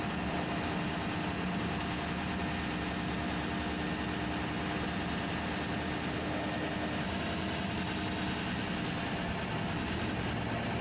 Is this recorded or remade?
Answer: recorded